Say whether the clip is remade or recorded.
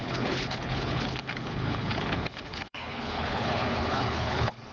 remade